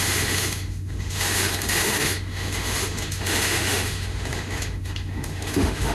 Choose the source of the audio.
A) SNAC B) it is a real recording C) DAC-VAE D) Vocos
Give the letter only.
C